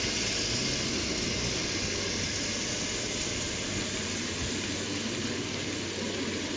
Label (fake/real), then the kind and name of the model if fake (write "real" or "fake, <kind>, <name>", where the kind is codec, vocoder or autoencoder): real